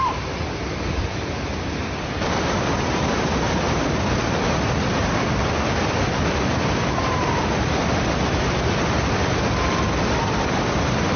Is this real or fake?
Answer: fake